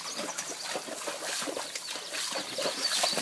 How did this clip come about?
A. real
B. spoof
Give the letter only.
A